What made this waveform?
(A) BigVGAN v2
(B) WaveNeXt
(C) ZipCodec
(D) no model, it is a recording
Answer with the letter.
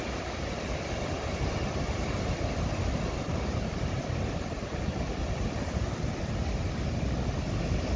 D